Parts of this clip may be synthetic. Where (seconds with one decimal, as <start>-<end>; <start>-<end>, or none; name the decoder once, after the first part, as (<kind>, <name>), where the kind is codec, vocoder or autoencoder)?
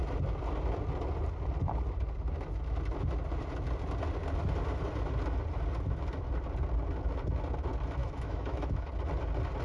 8.0-8.9 (autoencoder, DAC-VAE)